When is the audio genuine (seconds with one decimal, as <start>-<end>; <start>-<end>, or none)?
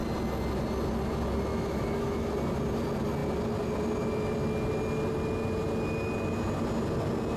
0.0-1.5; 2.3-7.4